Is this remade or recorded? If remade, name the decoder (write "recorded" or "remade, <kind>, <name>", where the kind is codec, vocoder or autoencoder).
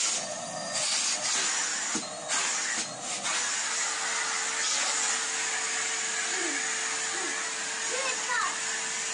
recorded